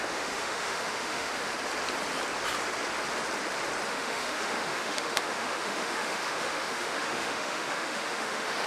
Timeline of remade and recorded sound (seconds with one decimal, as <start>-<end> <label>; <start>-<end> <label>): 0.0-1.5 remade; 1.5-3.9 recorded; 3.9-8.7 remade